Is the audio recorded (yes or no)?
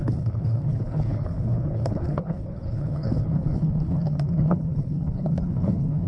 no